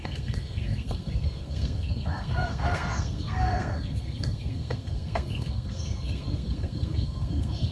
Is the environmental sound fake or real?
fake